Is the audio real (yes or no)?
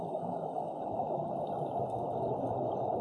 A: yes